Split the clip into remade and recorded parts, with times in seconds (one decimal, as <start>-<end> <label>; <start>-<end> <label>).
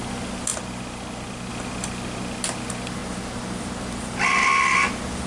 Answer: 0.0-5.3 recorded